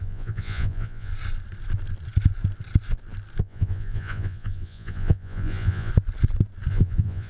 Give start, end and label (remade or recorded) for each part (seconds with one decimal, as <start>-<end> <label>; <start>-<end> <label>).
0.0-1.1 remade; 1.1-3.4 recorded; 3.4-5.9 remade; 5.9-6.7 recorded; 6.7-7.3 remade